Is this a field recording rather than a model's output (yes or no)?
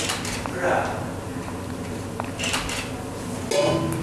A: yes